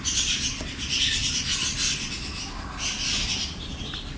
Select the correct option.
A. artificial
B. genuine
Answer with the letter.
B